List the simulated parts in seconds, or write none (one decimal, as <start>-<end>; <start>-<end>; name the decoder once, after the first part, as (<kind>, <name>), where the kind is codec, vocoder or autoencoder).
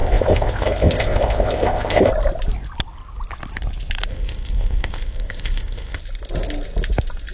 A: 0.0-2.1 (codec, ZipCodec); 4.1-6.0